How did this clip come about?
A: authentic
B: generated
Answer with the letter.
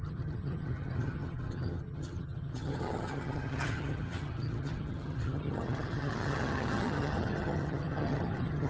B